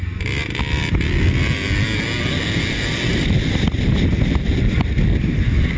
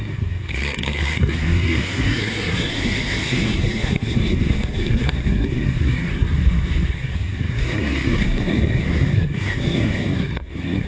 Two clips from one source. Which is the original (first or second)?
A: first